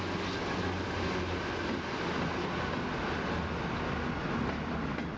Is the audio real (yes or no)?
yes